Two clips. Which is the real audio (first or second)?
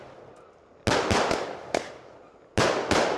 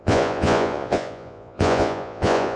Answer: first